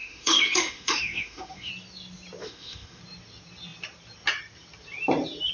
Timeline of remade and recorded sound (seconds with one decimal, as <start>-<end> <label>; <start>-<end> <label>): 0.0-1.7 remade; 1.7-2.4 recorded; 2.4-3.0 remade; 3.0-5.5 recorded